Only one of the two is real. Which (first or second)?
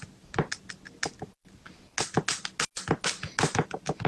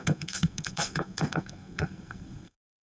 first